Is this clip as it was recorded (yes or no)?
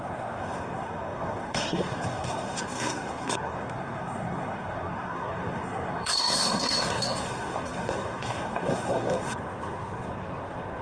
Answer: no